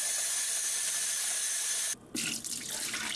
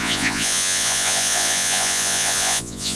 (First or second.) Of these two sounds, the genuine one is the first